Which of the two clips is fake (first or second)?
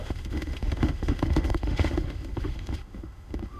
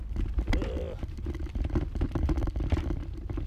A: first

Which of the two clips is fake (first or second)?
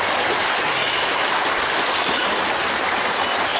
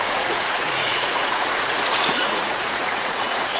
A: second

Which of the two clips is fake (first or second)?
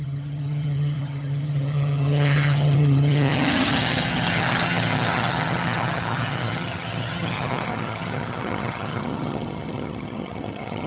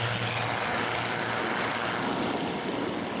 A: first